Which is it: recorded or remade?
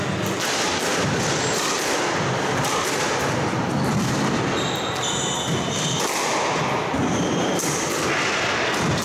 recorded